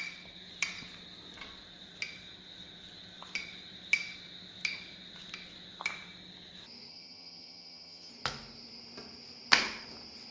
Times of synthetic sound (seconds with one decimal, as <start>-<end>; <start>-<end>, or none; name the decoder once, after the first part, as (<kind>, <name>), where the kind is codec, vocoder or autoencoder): 6.9-8.1 (vocoder, HiFi-GAN)